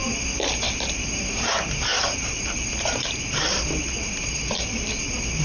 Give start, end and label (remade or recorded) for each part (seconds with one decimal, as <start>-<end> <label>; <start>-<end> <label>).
0.0-1.5 remade; 1.5-1.9 recorded; 1.9-5.4 remade